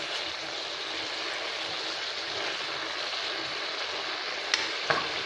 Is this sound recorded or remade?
recorded